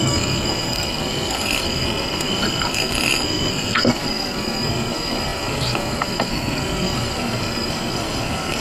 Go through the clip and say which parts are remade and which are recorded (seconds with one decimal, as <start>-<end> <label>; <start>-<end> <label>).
0.0-8.6 remade